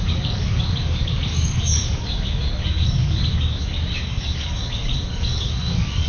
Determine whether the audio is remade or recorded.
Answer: remade